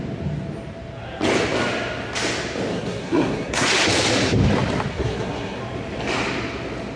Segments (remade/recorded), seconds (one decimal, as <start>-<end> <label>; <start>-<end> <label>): 0.0-2.7 recorded; 2.7-3.7 remade; 3.7-4.9 recorded; 4.9-5.6 remade; 5.6-7.0 recorded